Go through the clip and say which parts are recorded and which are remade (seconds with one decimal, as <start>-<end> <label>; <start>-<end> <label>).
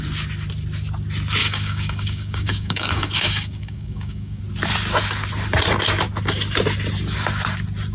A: 0.0-1.4 recorded; 1.4-4.4 remade; 4.4-7.9 recorded